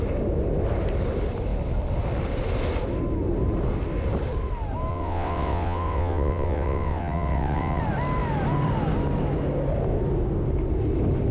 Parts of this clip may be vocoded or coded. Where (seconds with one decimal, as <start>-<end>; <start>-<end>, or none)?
4.9-7.8